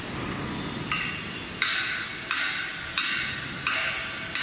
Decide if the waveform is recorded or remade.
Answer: recorded